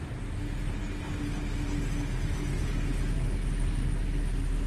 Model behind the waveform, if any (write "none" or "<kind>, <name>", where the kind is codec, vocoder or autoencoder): none